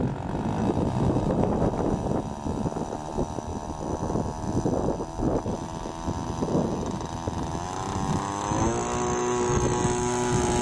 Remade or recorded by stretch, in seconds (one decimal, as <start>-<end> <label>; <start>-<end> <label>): 0.0-10.6 recorded